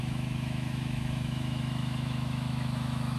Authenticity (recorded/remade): remade